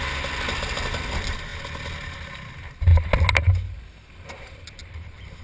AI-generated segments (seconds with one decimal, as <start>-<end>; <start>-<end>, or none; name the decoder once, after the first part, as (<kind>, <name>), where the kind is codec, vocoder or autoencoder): none